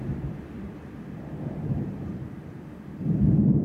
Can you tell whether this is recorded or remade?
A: remade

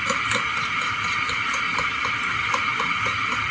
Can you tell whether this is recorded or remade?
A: recorded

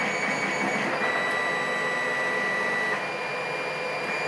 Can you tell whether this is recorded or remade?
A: recorded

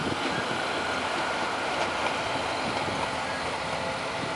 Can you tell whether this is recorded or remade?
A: recorded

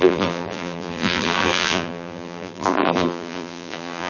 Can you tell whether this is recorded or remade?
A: remade